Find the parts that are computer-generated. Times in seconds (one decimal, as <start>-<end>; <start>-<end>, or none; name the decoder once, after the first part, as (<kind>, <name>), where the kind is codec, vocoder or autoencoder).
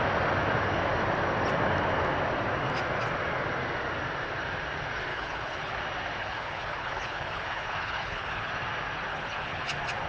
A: 5.1-5.8 (codec, HILCodec); 6.2-8.5; 9.1-9.7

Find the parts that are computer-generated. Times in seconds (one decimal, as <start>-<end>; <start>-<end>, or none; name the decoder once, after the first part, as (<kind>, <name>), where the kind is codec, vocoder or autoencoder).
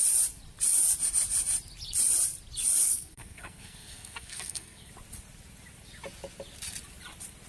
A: 2.8-4.9 (codec, SNAC)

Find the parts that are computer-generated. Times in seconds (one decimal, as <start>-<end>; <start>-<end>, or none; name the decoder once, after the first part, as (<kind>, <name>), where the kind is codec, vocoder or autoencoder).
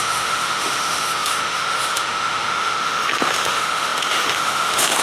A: 0.0-5.0 (autoencoder, DAC-VAE)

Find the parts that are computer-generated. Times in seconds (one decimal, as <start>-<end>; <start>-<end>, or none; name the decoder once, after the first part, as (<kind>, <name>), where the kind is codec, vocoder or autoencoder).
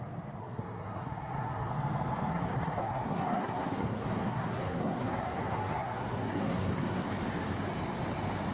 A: 0.4-1.7 (codec, SNAC); 2.3-7.1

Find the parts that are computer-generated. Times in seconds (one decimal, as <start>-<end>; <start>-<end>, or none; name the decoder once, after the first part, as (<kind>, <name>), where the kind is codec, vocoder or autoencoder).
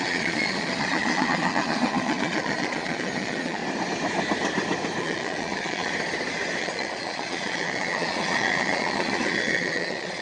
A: 0.0-3.6 (vocoder, Vocos); 5.0-5.9; 6.6-10.2